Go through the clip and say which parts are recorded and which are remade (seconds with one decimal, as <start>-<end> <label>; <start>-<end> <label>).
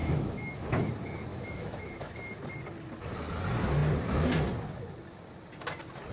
0.0-0.9 remade; 0.9-1.3 recorded; 1.3-2.4 remade; 2.4-6.1 recorded